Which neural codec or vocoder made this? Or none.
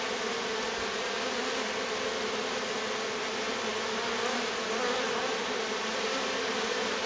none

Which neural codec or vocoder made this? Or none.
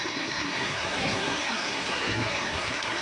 codec, SNAC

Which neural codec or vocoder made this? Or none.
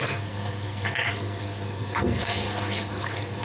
codec, SNAC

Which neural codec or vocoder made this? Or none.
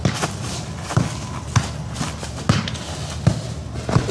none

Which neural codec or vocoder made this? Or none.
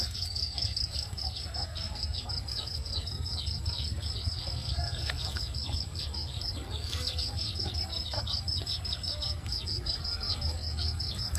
codec, SNAC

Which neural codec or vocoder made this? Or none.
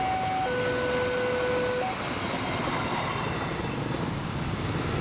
none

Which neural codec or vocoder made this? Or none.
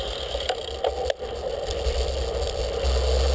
none